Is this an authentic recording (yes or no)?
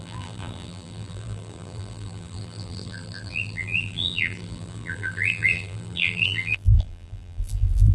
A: no